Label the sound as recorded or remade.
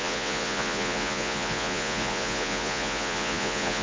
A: remade